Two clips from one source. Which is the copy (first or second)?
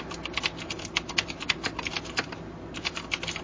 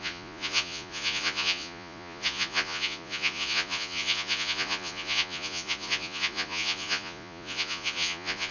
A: second